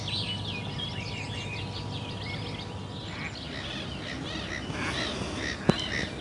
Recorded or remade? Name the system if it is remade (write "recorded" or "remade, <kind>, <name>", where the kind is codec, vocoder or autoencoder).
recorded